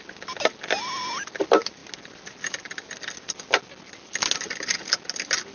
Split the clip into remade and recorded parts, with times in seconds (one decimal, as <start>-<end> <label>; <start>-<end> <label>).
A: 0.0-5.5 recorded